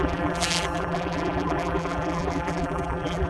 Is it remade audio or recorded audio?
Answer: remade